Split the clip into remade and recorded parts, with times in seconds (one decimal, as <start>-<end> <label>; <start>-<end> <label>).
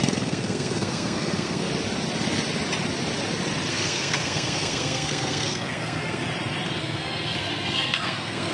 0.0-1.7 remade; 1.7-3.7 recorded; 3.7-6.2 remade; 6.2-6.8 recorded; 6.8-8.5 remade